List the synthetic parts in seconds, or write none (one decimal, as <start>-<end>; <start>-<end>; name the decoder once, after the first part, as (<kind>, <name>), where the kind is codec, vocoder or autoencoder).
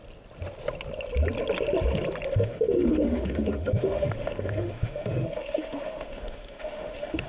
2.3-7.3 (autoencoder, DAC-VAE)